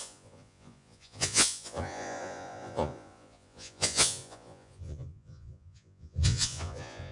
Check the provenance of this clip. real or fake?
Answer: fake